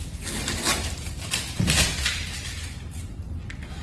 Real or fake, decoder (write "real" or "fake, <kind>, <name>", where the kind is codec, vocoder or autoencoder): real